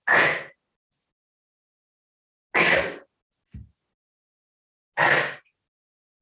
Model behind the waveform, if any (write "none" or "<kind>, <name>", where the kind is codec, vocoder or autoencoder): none